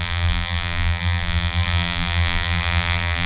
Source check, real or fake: fake